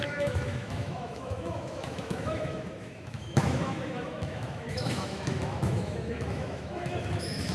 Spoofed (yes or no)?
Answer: yes